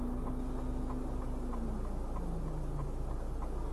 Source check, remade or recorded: recorded